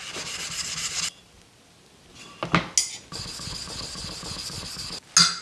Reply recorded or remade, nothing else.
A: recorded